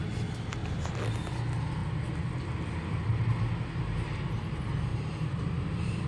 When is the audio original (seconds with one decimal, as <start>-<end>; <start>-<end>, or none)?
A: 0.0-4.9; 5.4-6.1